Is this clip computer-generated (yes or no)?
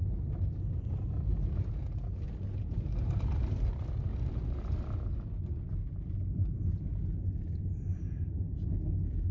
no